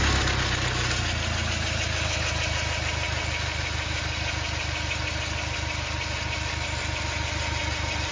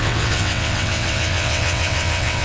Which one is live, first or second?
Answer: first